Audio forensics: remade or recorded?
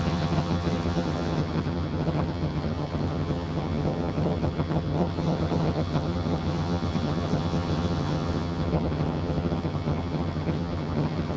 remade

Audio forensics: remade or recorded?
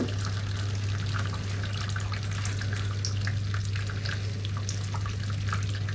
recorded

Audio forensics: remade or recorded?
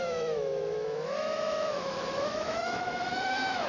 remade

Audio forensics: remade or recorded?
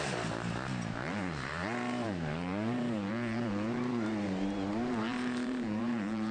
remade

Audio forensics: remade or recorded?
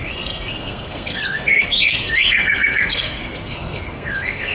remade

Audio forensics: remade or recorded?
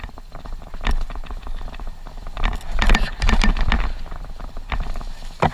recorded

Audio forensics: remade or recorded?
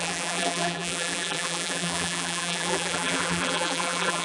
remade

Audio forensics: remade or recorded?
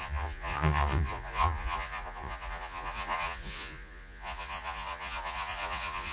remade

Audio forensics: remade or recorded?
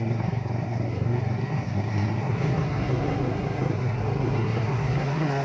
remade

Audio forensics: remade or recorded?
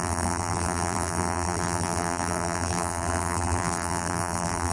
remade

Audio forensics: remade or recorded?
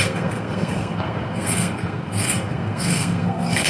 remade